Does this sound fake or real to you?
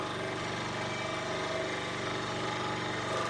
real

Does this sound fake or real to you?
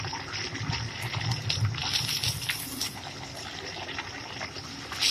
real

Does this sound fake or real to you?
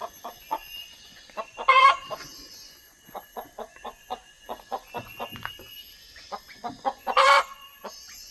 fake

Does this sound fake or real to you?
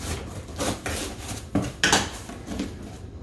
real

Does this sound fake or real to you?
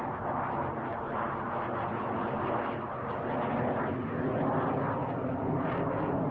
real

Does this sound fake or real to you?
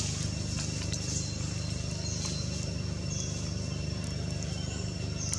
real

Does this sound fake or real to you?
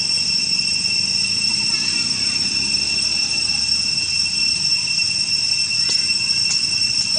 real